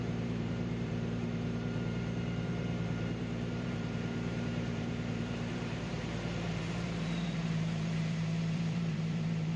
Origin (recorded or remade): remade